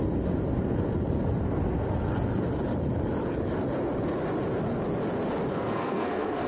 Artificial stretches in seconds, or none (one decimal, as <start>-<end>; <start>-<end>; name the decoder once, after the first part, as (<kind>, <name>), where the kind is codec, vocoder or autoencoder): 5.5-6.5 (codec, SNAC)